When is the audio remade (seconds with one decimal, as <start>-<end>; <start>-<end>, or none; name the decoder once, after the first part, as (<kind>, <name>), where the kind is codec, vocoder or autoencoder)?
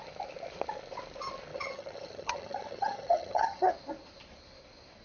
1.5-3.7 (vocoder, HiFi-GAN)